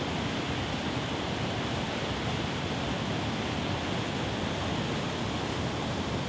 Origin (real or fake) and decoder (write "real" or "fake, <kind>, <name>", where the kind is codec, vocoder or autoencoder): real